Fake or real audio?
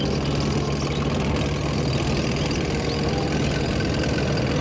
real